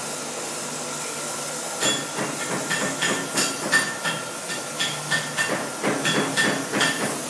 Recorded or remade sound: recorded